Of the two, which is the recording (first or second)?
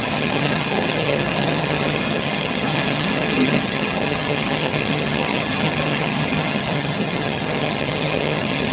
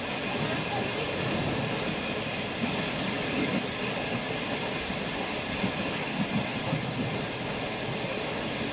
second